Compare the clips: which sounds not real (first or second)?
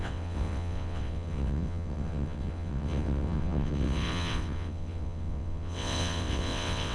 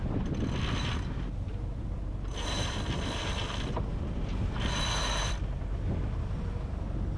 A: first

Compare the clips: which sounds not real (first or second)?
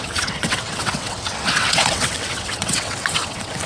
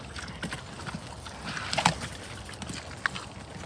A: first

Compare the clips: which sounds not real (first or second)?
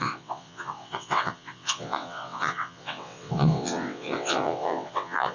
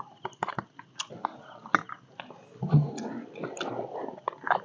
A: first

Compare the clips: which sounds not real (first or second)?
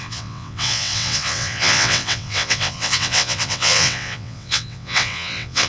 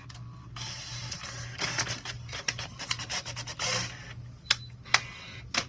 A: first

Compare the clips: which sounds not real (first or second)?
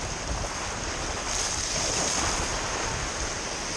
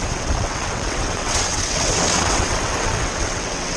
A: second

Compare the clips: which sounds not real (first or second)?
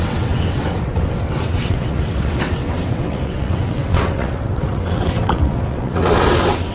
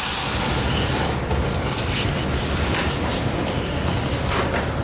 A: first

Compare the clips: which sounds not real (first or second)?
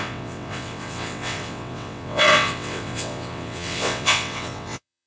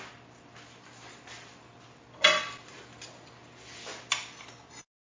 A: first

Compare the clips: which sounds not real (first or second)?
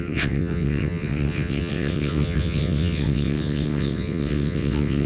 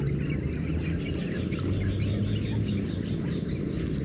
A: first